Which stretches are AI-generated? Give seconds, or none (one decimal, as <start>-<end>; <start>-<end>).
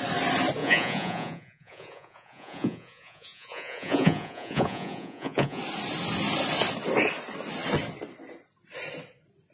0.6-5.6